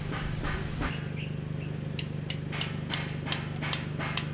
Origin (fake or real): real